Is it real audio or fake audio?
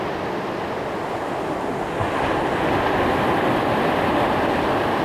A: real